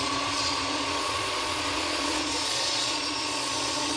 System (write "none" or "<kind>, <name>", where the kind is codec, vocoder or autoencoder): vocoder, Vocos